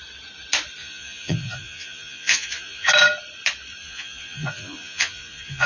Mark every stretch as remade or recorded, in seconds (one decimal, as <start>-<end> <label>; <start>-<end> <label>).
0.0-0.8 recorded; 0.8-2.9 remade; 2.9-3.8 recorded; 3.8-5.7 remade